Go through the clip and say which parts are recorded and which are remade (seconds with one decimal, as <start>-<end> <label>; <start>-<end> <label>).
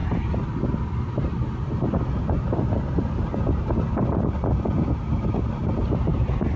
0.0-6.6 recorded